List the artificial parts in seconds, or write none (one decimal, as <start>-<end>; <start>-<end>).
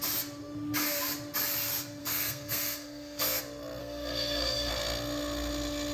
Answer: 2.0-3.4; 3.8-4.7